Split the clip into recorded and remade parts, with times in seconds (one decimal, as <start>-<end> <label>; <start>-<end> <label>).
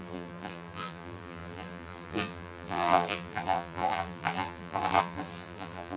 0.0-6.0 remade